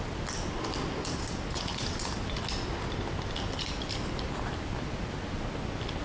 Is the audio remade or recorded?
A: recorded